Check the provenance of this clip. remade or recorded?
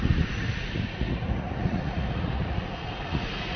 remade